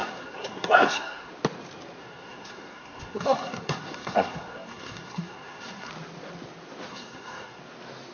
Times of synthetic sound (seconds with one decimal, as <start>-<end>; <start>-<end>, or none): 0.0-1.3; 2.0-5.9; 6.9-7.6